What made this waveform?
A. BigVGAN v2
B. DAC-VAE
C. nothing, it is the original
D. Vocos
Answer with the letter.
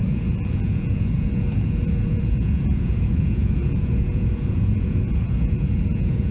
D